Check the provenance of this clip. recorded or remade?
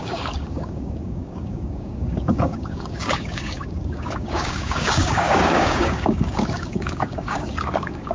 remade